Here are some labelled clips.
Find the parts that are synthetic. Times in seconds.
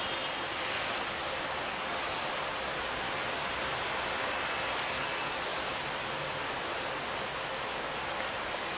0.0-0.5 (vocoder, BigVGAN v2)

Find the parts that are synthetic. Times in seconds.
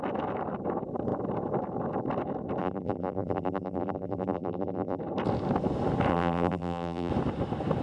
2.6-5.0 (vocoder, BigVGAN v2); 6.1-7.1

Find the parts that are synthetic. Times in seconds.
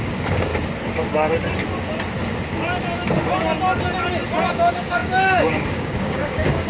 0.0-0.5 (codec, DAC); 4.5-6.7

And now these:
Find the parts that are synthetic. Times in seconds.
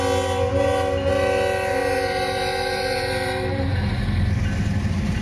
1.8-5.2 (vocoder, BigVGAN v2)